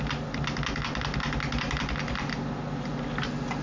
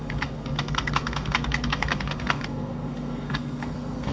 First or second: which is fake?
second